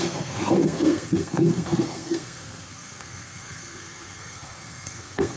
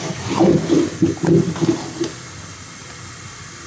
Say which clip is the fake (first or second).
first